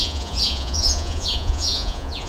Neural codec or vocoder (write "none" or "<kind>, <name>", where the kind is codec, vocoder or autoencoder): vocoder, Vocos